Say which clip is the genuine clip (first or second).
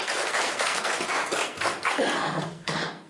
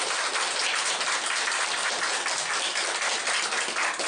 second